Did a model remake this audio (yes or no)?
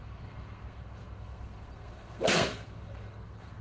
yes